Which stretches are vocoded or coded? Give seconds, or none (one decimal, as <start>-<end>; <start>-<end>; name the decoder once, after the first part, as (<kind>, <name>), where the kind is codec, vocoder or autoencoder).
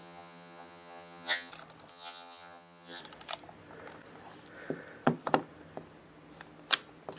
0.0-1.5 (vocoder, HiFi-GAN); 1.9-3.0